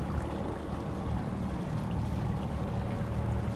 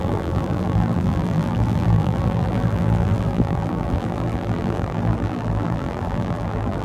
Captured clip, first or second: first